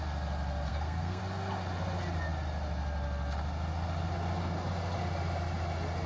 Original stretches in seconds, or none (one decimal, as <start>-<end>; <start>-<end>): 0.0-0.7; 1.2-6.1